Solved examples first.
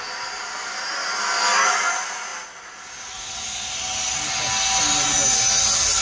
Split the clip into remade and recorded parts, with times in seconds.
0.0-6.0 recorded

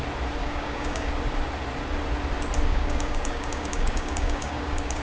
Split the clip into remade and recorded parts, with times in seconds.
0.0-0.4 recorded; 0.4-1.1 remade; 1.1-2.7 recorded; 2.7-5.0 remade

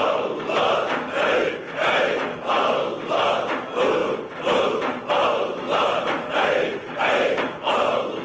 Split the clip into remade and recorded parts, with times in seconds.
0.0-4.0 recorded; 4.0-5.1 remade; 5.1-5.8 recorded; 5.8-7.0 remade; 7.0-8.2 recorded

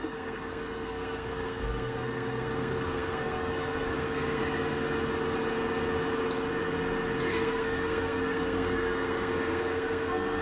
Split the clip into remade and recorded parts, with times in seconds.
0.0-4.4 remade; 4.4-7.3 recorded; 7.3-10.4 remade

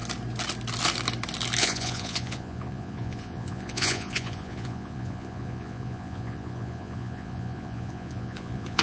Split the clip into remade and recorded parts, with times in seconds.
0.0-1.6 recorded; 1.6-8.8 remade